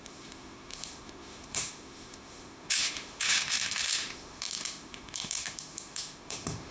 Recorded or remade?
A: remade